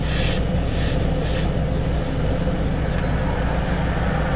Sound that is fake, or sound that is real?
real